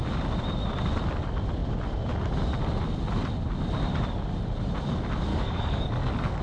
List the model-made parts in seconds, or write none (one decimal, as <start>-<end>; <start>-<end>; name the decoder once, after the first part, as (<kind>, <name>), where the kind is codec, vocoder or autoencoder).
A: 5.3-6.4 (codec, DAC)